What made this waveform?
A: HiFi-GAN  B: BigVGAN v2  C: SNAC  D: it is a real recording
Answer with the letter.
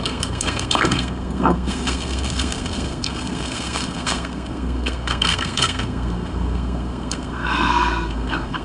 C